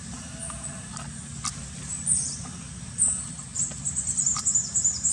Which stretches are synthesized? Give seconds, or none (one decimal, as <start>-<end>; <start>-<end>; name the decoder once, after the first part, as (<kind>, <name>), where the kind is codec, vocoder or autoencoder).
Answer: none